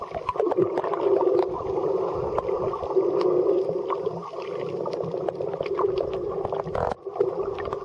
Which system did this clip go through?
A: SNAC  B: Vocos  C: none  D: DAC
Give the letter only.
C